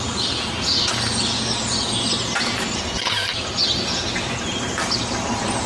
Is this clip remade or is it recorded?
recorded